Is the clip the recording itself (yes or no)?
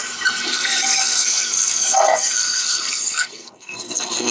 no